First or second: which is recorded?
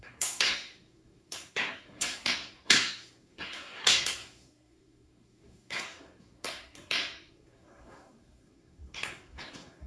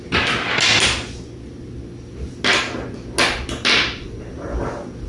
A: second